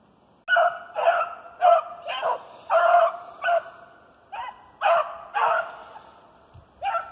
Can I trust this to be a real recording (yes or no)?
yes